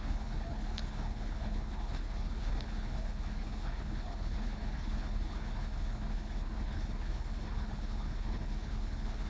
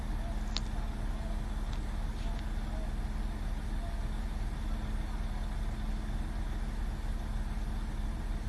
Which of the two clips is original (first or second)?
second